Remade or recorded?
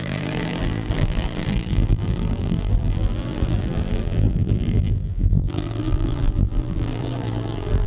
remade